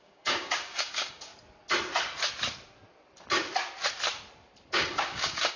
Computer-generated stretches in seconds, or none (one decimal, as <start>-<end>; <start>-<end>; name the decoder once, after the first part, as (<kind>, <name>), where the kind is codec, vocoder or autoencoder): 0.0-1.3 (codec, DAC); 4.7-5.6